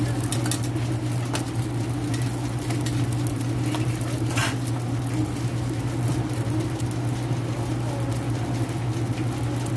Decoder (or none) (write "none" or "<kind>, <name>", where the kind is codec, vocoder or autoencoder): none